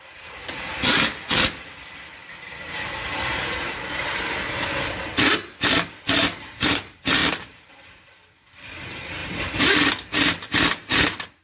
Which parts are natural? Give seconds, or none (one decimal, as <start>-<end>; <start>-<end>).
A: 0.0-7.2; 7.7-9.2; 9.9-11.4